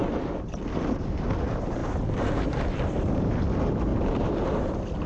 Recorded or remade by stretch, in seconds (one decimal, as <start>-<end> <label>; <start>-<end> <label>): 0.0-1.8 recorded; 1.8-3.1 remade; 3.1-3.9 recorded; 3.9-5.1 remade